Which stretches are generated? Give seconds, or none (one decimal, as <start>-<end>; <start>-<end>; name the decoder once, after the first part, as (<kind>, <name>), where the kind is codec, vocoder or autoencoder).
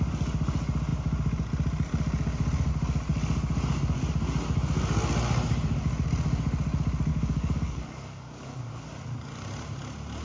7.1-8.9 (codec, DAC)